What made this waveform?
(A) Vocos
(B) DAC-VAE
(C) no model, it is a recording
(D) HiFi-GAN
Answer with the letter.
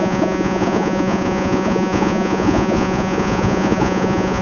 A